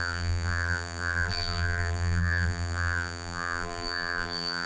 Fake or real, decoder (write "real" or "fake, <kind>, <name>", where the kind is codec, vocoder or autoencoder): fake, vocoder, BigVGAN v2